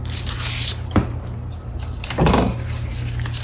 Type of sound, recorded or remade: recorded